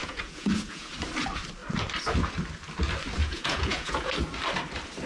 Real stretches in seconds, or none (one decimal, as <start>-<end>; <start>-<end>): 0.9-3.2; 4.1-5.1

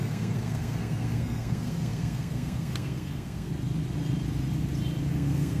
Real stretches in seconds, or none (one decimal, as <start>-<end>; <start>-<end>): 3.5-5.1

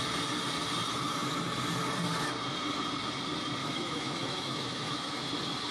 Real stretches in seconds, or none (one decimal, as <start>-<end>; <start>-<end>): 0.0-3.6; 5.3-5.7

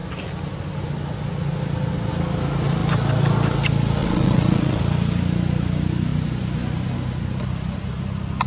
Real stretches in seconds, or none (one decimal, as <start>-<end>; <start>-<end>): 0.0-4.0; 4.8-8.5

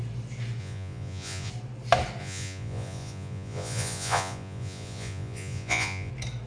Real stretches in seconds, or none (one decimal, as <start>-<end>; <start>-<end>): 0.0-0.6; 1.5-2.2; 6.1-6.5

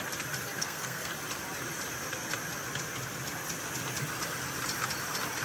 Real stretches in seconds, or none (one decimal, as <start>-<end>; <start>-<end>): 0.0-0.6; 1.1-5.4

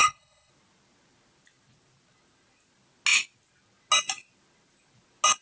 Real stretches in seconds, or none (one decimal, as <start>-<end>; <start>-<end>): 0.5-5.4

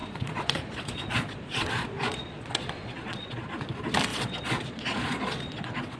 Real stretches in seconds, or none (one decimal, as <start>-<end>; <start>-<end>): 3.6-4.1